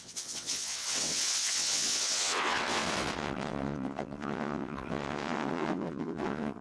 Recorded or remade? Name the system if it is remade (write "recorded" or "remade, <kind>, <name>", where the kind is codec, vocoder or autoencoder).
remade, vocoder, WaveNeXt